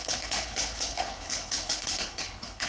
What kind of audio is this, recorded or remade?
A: remade